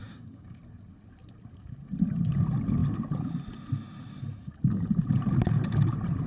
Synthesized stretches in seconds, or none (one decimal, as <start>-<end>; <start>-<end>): 0.0-0.6